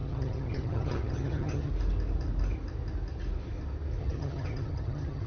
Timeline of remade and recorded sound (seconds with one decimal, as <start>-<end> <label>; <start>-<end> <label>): 0.0-1.7 remade; 1.7-4.0 recorded; 4.0-5.3 remade

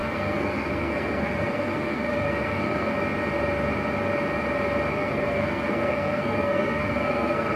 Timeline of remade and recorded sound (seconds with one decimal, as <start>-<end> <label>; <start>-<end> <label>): 0.0-2.9 remade; 2.9-4.9 recorded; 4.9-7.6 remade

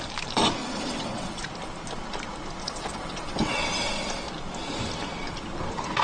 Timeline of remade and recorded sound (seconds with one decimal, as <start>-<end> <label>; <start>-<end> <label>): 0.0-0.6 recorded; 0.6-1.4 remade; 1.4-2.6 recorded; 2.6-3.6 remade; 3.6-6.0 recorded